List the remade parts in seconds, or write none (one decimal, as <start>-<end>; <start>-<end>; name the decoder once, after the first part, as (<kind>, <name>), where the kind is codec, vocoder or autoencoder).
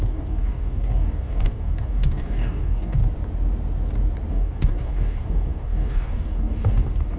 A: 0.0-3.0 (codec, DAC); 4.3-7.2